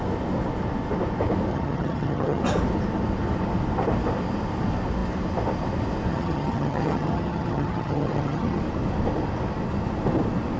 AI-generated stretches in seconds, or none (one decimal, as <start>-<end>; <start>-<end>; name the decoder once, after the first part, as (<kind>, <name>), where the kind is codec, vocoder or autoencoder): 1.5-2.4 (vocoder, HiFi-GAN); 6.1-8.6